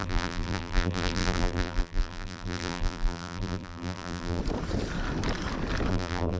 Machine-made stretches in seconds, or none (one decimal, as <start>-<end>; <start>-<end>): 0.0-4.4; 5.9-6.4